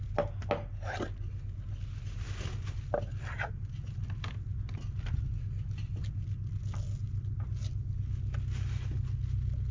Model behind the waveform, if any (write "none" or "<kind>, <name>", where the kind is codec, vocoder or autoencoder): none